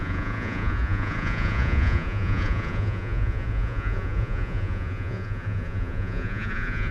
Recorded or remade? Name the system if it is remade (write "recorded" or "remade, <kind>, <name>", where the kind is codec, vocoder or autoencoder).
remade, vocoder, Vocos